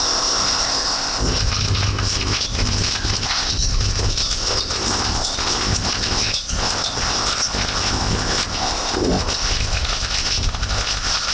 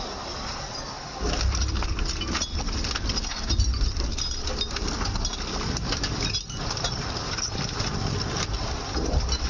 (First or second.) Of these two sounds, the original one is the second